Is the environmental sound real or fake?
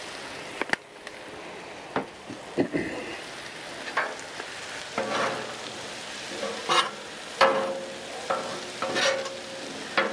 real